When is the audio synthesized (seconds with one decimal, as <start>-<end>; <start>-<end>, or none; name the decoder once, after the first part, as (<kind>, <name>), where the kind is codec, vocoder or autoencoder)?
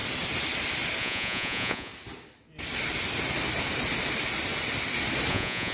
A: 1.0-1.9 (vocoder, Vocos); 5.3-5.7